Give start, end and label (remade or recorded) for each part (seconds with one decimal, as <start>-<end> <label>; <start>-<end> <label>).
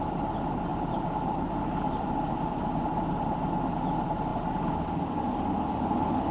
0.0-0.7 recorded; 0.7-3.4 remade; 3.4-6.3 recorded